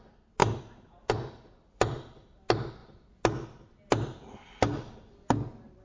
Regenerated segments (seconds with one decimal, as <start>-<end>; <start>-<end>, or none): none

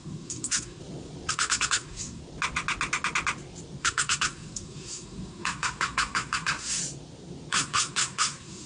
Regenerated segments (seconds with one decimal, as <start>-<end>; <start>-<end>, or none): 0.0-0.8; 1.3-2.2; 3.8-6.8; 7.5-8.7

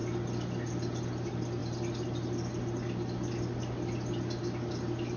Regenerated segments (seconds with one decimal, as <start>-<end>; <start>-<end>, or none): none

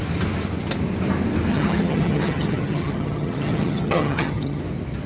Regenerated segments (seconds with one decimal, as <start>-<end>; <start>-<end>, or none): 1.5-4.6

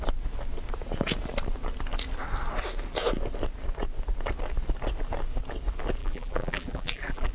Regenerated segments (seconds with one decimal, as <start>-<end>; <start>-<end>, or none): 6.0-7.3

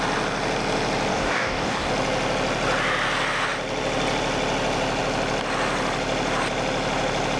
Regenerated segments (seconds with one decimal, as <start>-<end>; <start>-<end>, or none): 1.1-1.9